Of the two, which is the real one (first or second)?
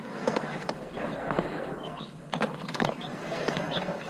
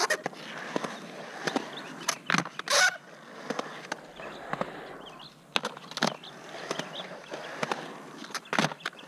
second